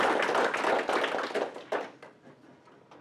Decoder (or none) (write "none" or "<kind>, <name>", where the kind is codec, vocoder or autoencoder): none